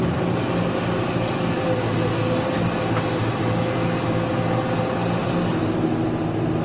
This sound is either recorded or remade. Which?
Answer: recorded